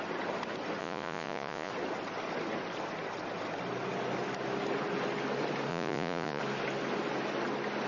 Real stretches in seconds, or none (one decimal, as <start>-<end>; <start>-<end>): 0.0-0.8; 1.7-5.7; 6.4-7.9